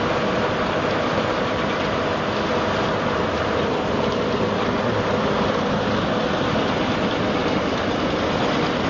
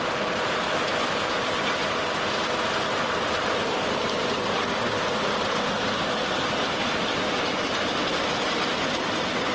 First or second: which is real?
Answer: first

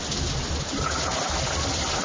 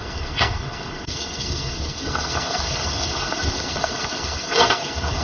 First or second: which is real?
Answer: first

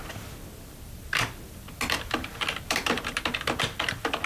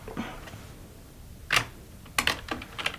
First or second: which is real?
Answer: second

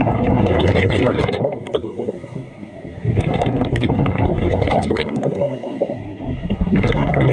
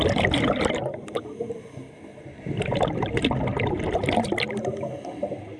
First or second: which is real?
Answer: second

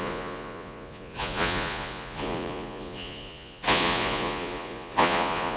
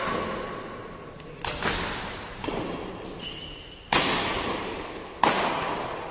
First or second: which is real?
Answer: second